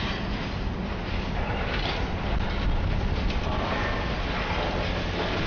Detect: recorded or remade recorded